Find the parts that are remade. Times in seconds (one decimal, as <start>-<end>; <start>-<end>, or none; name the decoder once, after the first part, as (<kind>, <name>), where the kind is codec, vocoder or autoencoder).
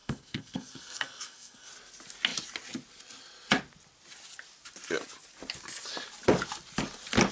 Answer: 0.0-1.7 (codec, SNAC)